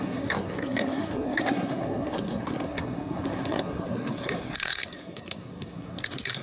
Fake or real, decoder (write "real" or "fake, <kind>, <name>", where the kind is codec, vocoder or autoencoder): fake, codec, SNAC